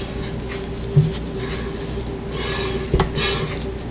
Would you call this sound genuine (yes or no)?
yes